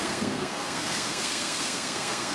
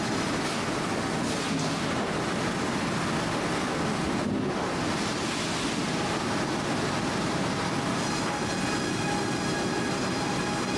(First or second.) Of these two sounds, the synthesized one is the first